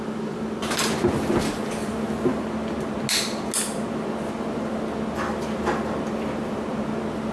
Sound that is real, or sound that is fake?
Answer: real